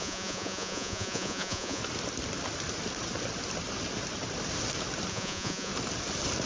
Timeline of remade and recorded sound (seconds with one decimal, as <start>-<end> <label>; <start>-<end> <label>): 0.0-1.8 remade; 1.8-5.1 recorded; 5.1-5.7 remade; 5.7-6.5 recorded